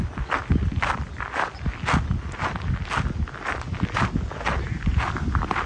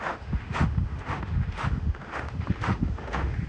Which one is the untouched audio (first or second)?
first